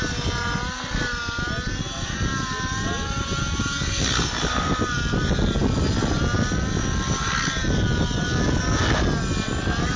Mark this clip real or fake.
real